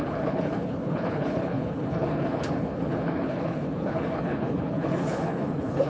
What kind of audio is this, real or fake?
fake